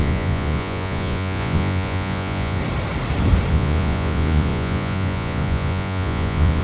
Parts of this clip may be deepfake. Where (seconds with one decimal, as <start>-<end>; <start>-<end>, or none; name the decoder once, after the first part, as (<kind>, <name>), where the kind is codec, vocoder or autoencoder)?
0.0-2.6 (vocoder, Vocos); 3.5-6.6